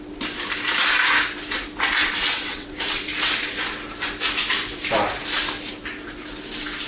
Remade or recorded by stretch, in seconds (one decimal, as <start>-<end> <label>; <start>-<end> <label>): 0.0-2.0 recorded; 2.0-2.7 remade; 2.7-6.9 recorded